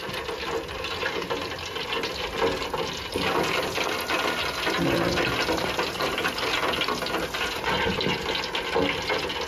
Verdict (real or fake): real